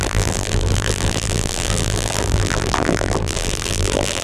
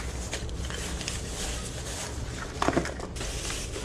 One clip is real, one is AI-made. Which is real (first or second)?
second